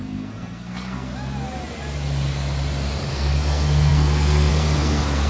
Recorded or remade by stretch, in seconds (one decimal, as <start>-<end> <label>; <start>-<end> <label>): 0.0-1.1 remade; 1.1-3.1 recorded; 3.1-5.3 remade